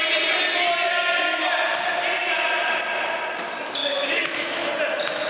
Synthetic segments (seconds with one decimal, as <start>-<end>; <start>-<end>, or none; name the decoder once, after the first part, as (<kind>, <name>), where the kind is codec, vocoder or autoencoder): 3.8-4.7 (autoencoder, DAC-VAE)